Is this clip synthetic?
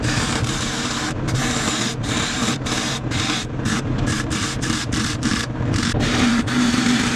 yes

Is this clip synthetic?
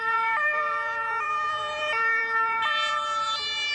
yes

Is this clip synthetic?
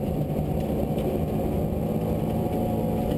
no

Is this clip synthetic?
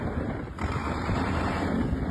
yes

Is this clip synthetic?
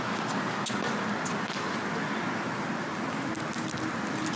no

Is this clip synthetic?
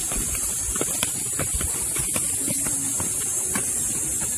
yes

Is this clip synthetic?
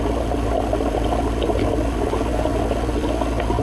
no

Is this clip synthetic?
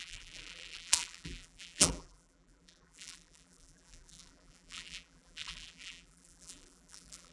yes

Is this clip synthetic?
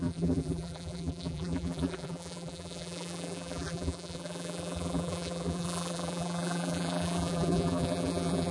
yes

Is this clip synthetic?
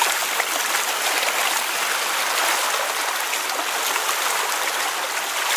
yes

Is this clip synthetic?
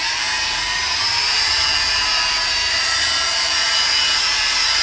yes